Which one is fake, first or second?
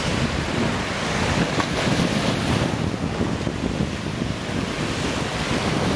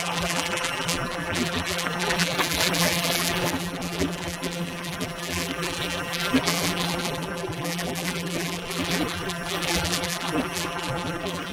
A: second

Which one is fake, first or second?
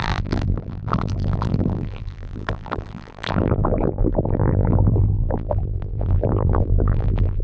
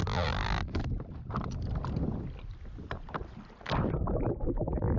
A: first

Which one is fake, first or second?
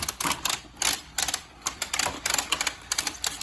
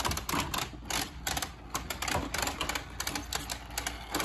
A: first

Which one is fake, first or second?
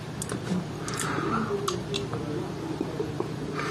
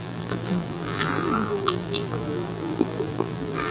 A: second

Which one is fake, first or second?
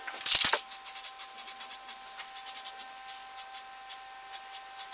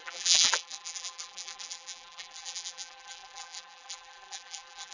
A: second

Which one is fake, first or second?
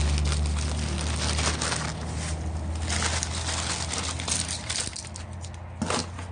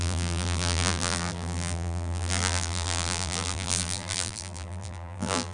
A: second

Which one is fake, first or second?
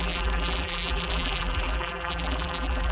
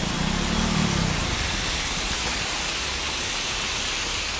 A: first